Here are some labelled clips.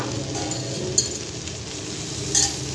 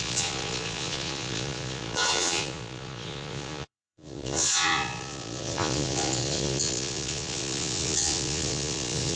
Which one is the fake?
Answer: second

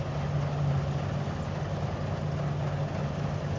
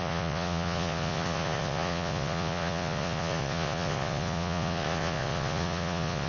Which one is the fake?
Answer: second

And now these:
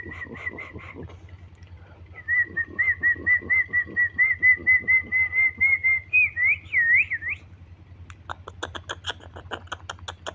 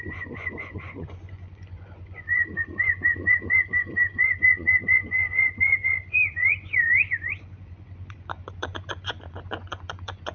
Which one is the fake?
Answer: second